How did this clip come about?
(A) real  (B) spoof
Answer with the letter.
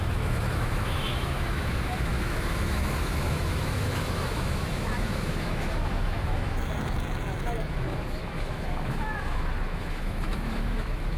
B